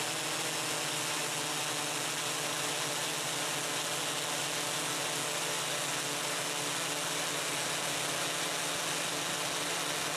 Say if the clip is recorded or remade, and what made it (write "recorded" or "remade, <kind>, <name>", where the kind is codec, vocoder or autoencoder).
recorded